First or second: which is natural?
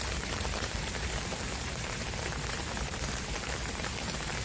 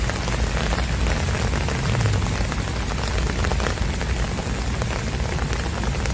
second